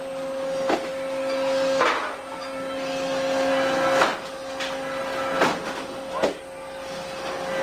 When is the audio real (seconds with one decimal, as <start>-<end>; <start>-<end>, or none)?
0.0-7.6